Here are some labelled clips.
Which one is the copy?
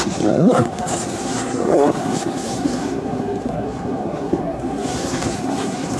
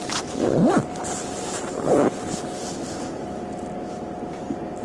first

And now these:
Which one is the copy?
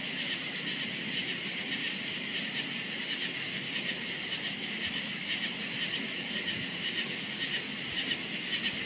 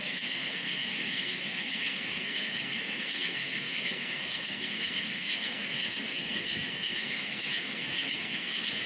second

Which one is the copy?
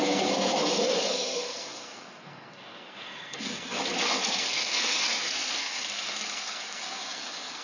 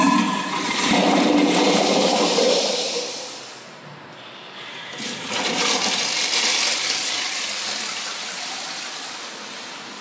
first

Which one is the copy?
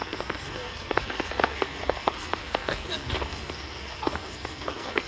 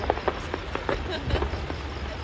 first